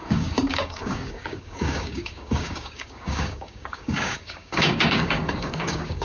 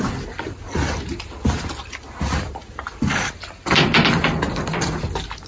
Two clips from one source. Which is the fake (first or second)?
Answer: first